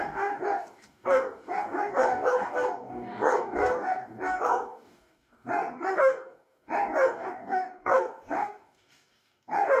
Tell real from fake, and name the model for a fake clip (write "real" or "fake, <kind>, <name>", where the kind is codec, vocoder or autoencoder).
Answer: fake, codec, DAC